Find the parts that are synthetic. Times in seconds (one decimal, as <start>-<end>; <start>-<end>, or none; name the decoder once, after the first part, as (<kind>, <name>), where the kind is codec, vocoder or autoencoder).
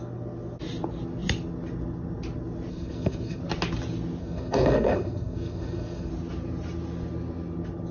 2.7-3.4 (codec, SNAC); 4.2-6.1